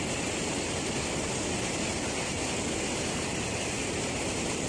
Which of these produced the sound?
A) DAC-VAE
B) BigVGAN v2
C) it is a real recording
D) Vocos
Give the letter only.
C